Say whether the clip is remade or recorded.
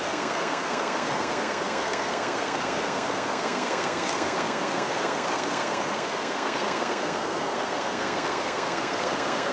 remade